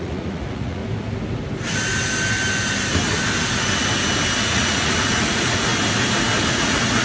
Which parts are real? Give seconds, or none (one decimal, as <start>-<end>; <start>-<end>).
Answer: 0.8-4.4; 5.7-6.5